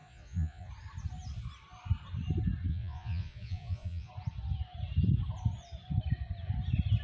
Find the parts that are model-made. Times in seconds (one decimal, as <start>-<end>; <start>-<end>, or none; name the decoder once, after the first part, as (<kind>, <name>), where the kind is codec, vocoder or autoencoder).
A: 0.0-0.7 (vocoder, Vocos); 2.7-4.1